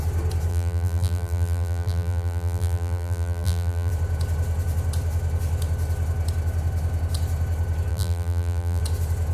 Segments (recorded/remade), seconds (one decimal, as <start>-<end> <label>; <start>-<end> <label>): 0.0-0.5 recorded; 0.5-3.9 remade; 3.9-7.9 recorded; 7.9-8.8 remade; 8.8-9.3 recorded